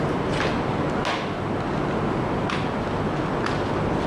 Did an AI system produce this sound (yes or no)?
no